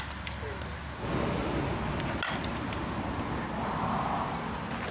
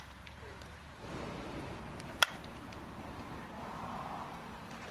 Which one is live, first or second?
first